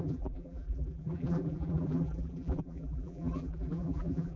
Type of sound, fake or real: fake